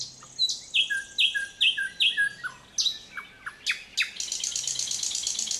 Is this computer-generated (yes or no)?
no